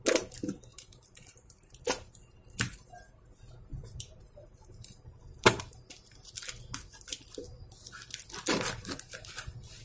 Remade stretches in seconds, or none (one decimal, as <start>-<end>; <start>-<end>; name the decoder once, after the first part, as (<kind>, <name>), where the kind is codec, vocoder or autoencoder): 0.7-2.2 (vocoder, BigVGAN v2); 3.7-6.5

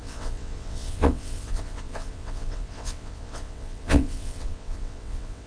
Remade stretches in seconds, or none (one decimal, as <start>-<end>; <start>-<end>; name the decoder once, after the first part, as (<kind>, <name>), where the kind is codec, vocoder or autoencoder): 0.0-5.5 (vocoder, WaveNeXt)

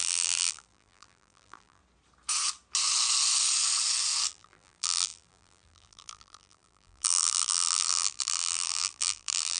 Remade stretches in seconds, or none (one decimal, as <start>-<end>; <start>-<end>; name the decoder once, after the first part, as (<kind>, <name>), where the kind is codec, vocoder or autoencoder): 0.0-1.8 (vocoder, BigVGAN v2); 4.3-9.6

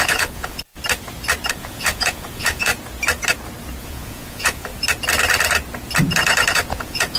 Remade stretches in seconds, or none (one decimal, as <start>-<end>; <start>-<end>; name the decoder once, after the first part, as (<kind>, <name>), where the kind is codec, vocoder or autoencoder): 0.0-0.7 (vocoder, Vocos); 1.5-2.7; 3.8-4.7; 6.5-7.2

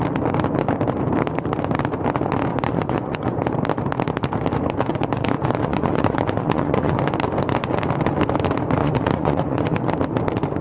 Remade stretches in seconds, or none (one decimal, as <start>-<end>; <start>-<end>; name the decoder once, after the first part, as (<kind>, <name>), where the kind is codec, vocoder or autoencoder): 2.5-3.4 (vocoder, Vocos); 4.9-7.0; 8.8-9.9

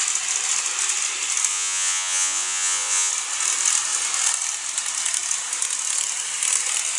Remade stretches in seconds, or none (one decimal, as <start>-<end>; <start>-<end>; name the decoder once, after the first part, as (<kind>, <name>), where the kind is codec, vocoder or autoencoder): 1.5-3.1 (vocoder, Vocos)

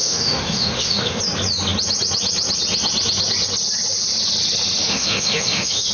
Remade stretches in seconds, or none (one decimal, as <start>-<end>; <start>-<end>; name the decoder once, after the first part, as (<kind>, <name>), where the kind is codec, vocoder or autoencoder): 0.0-1.2 (autoencoder, DAC-VAE); 4.8-5.9